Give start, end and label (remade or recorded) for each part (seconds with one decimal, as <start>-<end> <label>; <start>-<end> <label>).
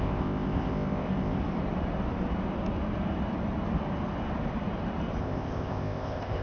0.0-1.4 remade; 1.4-5.2 recorded; 5.2-6.4 remade